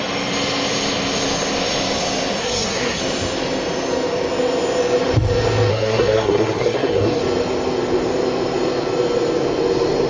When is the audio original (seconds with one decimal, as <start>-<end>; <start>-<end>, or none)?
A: 0.0-2.4; 3.0-5.7; 7.2-10.1